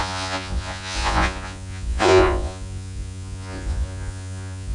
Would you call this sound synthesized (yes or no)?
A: yes